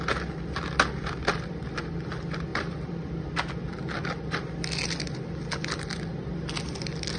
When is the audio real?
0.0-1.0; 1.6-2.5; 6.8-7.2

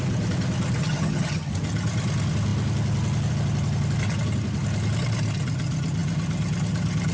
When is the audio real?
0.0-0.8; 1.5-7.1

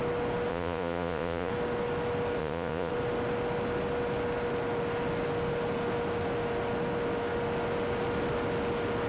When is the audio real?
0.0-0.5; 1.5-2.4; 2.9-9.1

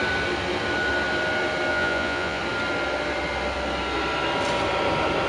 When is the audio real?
0.0-1.7; 2.4-5.3